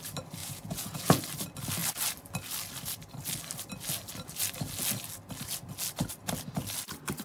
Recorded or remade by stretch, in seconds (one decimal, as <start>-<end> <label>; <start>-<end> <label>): 0.0-0.4 recorded; 0.4-1.2 remade; 1.2-7.2 recorded

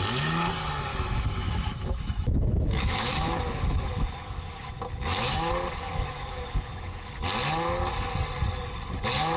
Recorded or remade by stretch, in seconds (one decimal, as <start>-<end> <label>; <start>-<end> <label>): 0.0-0.9 recorded; 0.9-5.5 remade; 5.5-5.9 recorded; 5.9-7.1 remade; 7.1-9.4 recorded

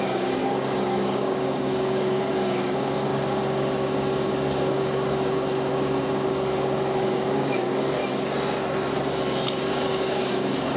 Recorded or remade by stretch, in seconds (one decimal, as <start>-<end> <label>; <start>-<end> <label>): 0.0-8.0 remade; 8.0-9.7 recorded; 9.7-10.8 remade

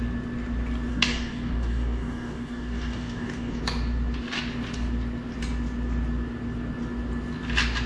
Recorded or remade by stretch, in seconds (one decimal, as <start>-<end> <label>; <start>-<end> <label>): 0.0-0.9 recorded; 0.9-3.6 remade; 3.6-7.9 recorded

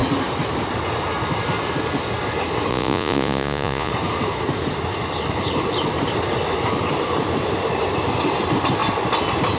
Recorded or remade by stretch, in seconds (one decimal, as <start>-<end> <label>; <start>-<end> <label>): 0.0-2.7 recorded; 2.7-3.9 remade; 3.9-9.6 recorded

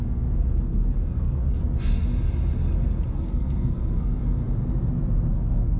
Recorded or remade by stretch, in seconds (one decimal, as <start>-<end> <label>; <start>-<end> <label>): 0.0-1.6 remade; 1.6-3.1 recorded; 3.1-4.4 remade; 4.4-5.3 recorded; 5.3-5.8 remade

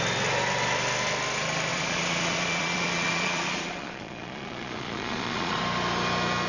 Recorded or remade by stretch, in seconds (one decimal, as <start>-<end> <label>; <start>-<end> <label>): 0.0-1.7 recorded; 1.7-5.6 remade; 5.6-6.5 recorded

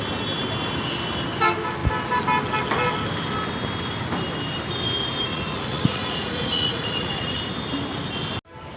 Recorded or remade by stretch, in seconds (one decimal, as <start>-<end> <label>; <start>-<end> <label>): 0.0-5.3 recorded; 5.3-7.4 remade; 7.4-8.8 recorded